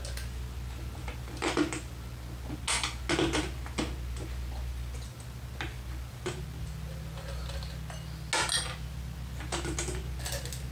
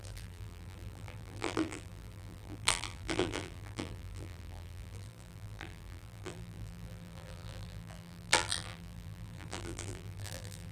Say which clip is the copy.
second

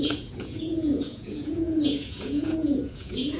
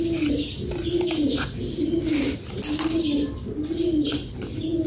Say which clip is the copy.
first